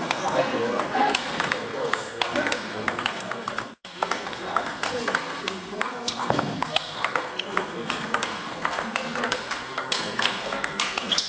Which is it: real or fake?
fake